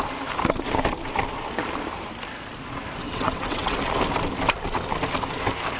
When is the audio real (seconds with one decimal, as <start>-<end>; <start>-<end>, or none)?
0.0-3.0; 3.8-5.8